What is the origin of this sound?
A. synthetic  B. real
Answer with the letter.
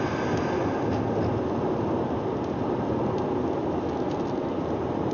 B